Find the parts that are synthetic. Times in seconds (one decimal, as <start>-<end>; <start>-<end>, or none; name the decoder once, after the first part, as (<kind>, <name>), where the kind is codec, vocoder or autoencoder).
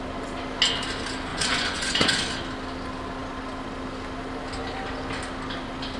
1.3-2.2 (vocoder, Vocos)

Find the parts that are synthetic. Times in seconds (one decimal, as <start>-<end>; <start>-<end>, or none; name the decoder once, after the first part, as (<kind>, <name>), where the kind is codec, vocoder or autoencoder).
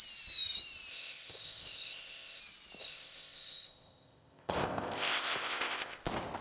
0.9-2.4 (codec, ZipCodec); 2.8-6.0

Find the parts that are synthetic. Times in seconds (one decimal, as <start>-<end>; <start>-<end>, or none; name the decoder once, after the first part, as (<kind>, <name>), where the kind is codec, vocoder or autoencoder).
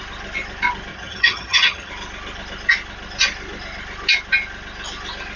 0.9-1.9 (vocoder, HiFi-GAN)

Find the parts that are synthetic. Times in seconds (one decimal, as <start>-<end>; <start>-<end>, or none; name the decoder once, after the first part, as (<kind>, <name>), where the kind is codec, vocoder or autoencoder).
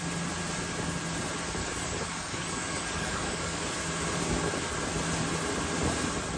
1.6-3.6 (codec, DAC)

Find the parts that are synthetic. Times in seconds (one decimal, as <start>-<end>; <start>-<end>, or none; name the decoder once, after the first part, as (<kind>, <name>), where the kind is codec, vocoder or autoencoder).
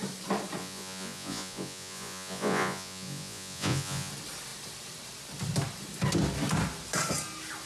0.6-4.1 (vocoder, Vocos)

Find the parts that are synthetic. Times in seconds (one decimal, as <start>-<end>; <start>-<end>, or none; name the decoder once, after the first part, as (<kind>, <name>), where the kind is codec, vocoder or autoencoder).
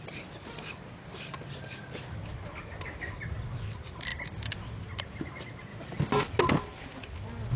none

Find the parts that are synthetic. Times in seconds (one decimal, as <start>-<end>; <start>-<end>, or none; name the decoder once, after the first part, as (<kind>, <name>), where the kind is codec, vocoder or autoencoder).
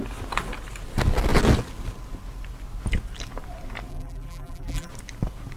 3.9-4.9 (vocoder, BigVGAN v2)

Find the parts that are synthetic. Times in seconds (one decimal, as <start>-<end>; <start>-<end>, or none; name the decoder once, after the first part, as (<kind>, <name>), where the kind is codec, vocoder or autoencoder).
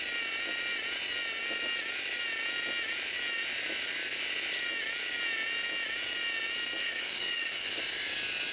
6.8-7.8 (codec, DAC)